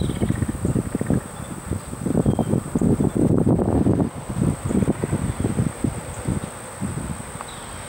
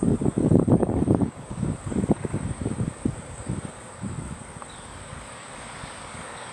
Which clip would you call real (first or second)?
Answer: first